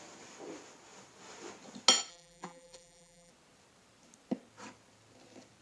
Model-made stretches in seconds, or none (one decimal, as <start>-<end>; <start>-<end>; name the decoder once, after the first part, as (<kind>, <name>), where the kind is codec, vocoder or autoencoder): 2.1-3.3 (vocoder, BigVGAN v2)